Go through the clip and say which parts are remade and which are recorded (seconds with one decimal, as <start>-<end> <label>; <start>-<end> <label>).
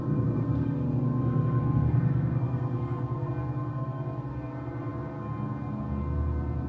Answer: 0.0-3.3 remade; 3.3-3.7 recorded; 3.7-4.3 remade; 4.3-6.7 recorded